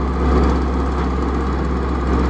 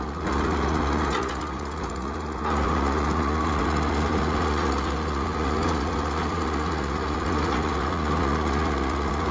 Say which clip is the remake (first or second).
second